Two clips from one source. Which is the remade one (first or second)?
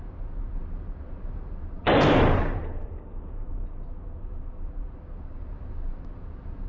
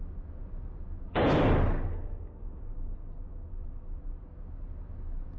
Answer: first